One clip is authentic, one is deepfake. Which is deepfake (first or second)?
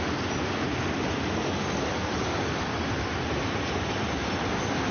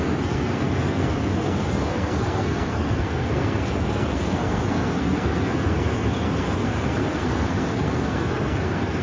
second